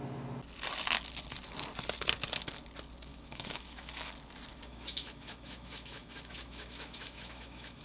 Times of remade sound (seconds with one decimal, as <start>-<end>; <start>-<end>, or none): 3.1-4.1; 4.5-7.8